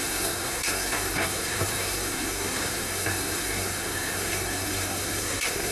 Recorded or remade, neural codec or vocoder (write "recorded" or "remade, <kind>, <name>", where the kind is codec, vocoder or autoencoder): remade, codec, SNAC